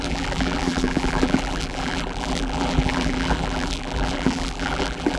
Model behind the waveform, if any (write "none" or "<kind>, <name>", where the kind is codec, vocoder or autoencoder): vocoder, BigVGAN v2